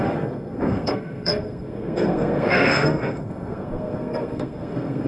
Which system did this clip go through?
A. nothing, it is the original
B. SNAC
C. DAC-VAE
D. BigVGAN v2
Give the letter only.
B